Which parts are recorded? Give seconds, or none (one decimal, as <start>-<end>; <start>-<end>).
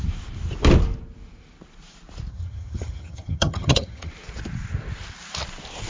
0.0-2.3; 4.1-5.9